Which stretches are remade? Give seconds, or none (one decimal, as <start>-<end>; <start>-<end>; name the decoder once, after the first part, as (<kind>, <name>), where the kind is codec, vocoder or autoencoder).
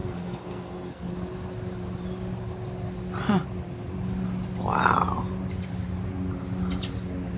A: 0.0-1.1 (codec, SNAC)